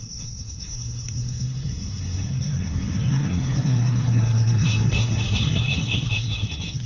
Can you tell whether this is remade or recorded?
remade